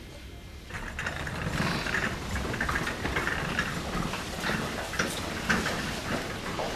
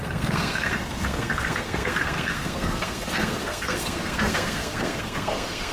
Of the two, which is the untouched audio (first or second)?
first